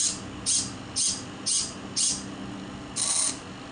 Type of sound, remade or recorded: recorded